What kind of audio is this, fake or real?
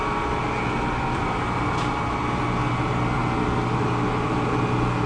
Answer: real